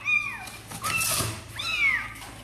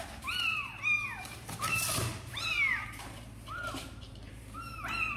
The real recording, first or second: first